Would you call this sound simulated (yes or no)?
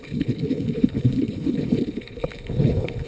yes